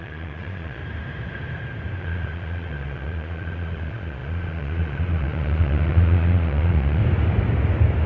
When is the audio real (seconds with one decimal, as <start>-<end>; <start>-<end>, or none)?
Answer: 0.8-2.0; 7.0-8.1

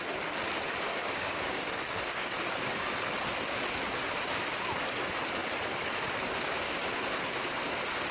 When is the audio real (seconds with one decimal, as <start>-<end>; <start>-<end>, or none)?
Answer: 0.0-0.9; 2.4-8.1

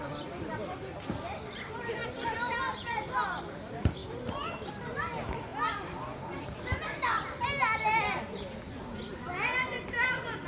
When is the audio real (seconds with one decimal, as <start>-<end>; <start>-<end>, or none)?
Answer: 4.0-4.7; 5.5-9.2

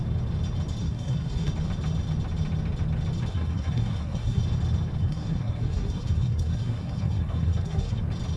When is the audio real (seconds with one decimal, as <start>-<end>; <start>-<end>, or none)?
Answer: 0.0-0.8; 1.5-3.3; 4.4-5.0; 8.0-8.4

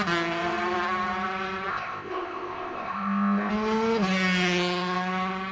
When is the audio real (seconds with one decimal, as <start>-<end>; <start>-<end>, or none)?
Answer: 0.0-1.7; 3.5-5.5

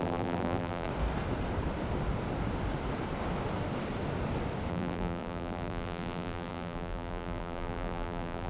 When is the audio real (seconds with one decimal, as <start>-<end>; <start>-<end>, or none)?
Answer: 0.9-4.7

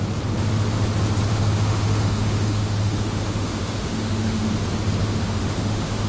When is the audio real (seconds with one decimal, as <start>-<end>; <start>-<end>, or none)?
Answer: 0.0-1.3; 4.5-5.0

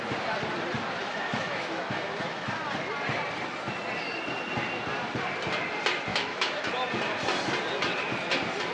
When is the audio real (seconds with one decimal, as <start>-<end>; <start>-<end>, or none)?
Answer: 0.0-1.0; 2.5-6.1; 6.7-8.7